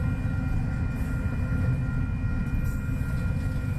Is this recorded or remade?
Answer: recorded